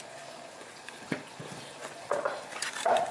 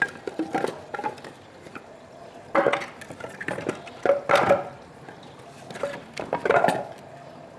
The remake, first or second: first